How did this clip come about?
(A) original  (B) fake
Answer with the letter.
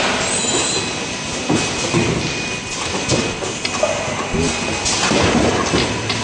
A